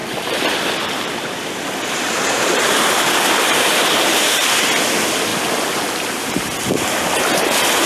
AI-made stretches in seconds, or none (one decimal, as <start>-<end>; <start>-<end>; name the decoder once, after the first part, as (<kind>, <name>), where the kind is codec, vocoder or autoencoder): 0.0-4.6 (vocoder, BigVGAN v2)